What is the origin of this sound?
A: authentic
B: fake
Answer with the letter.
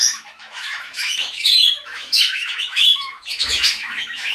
B